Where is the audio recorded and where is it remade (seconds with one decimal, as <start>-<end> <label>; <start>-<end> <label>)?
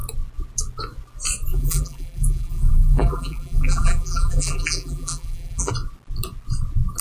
0.0-1.5 recorded; 1.5-5.7 remade; 5.7-7.0 recorded